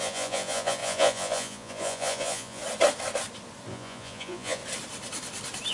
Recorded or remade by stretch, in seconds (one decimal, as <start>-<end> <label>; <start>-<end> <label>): 0.0-2.6 remade; 2.6-3.7 recorded; 3.7-4.6 remade; 4.6-5.7 recorded